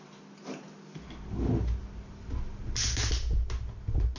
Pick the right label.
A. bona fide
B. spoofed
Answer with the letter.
A